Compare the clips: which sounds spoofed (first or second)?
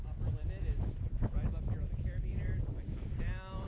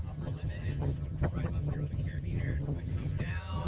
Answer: second